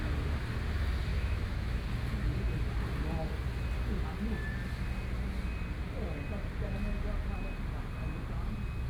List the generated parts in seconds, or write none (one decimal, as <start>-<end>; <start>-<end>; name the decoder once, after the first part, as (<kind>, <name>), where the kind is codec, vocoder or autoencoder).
1.1-1.8 (autoencoder, DAC-VAE)